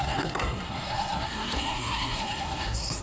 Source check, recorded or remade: remade